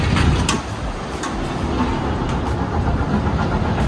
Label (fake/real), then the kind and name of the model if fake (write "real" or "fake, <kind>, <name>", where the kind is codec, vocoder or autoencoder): real